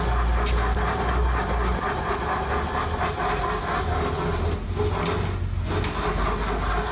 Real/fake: real